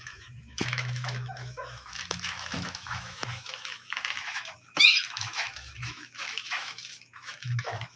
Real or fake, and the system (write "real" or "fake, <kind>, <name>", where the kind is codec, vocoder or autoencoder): fake, autoencoder, DAC-VAE